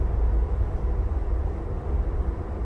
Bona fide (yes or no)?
yes